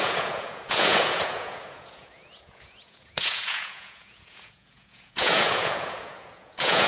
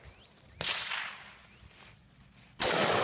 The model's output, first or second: first